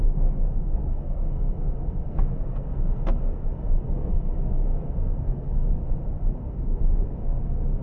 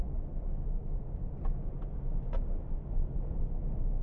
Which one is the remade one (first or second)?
first